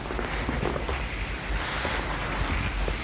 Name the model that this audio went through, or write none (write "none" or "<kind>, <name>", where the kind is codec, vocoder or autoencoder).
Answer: none